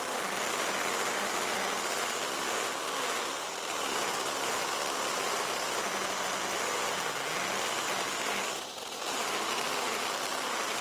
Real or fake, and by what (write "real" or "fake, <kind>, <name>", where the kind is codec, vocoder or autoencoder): real